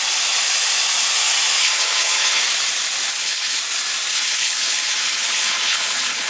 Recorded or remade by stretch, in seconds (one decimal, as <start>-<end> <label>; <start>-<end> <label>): 0.0-1.6 recorded; 1.6-2.4 remade; 2.4-3.1 recorded; 3.1-3.6 remade; 3.6-4.1 recorded; 4.1-6.3 remade